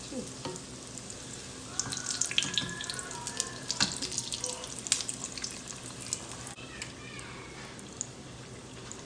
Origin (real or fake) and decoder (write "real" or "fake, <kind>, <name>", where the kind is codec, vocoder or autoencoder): real